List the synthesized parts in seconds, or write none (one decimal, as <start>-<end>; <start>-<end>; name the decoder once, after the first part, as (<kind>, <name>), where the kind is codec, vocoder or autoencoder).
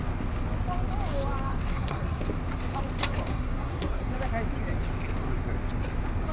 1.7-2.2 (codec, SNAC); 3.3-4.1